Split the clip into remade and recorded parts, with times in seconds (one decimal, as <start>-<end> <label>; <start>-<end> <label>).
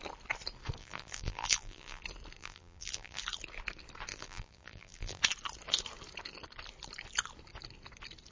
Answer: 0.0-0.8 recorded; 0.8-2.0 remade; 2.0-2.4 recorded; 2.4-3.2 remade; 3.2-4.1 recorded; 4.1-5.2 remade; 5.2-8.3 recorded